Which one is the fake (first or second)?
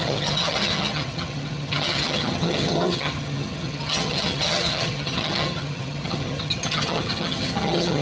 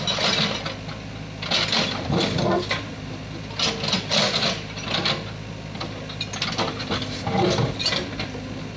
first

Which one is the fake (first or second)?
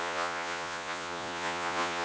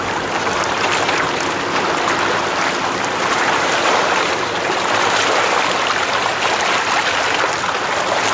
first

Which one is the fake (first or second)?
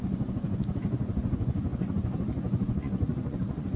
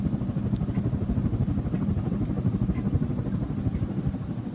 first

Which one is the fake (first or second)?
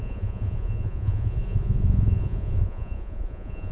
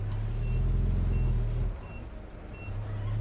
first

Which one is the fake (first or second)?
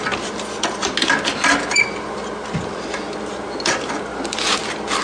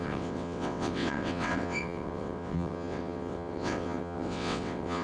second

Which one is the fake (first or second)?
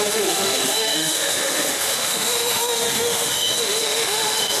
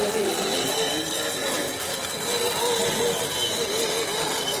first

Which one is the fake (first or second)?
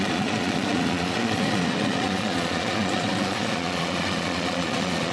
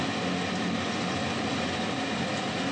first